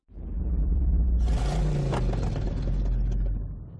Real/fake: real